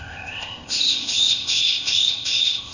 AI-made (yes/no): yes